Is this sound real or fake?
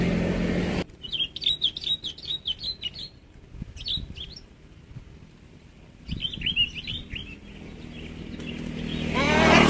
real